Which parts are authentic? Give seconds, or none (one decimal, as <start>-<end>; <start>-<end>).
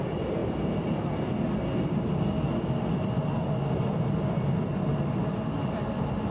0.0-6.3